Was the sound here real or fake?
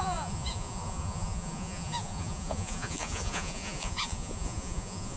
fake